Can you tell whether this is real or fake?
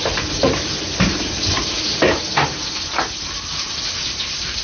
fake